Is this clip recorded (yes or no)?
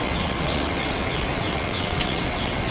no